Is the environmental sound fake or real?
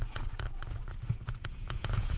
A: fake